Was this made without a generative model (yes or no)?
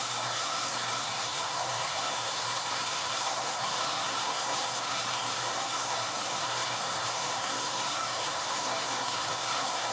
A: no